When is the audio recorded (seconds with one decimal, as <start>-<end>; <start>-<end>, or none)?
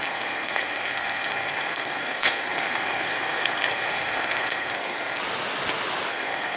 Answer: 5.2-6.1